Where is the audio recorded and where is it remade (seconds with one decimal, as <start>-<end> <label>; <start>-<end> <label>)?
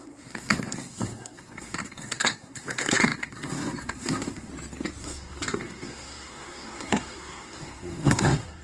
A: 0.0-4.5 remade; 4.5-5.0 recorded; 5.0-8.6 remade